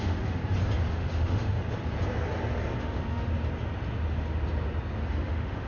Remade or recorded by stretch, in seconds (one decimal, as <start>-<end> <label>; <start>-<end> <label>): 0.0-0.4 remade; 0.4-0.9 recorded; 0.9-1.6 remade; 1.6-2.8 recorded; 2.8-3.3 remade; 3.3-5.1 recorded; 5.1-5.7 remade